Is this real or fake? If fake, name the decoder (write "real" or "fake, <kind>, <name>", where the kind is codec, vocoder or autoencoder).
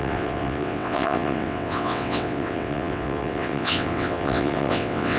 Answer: fake, vocoder, WaveNeXt